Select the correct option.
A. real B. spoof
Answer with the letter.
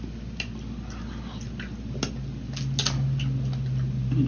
A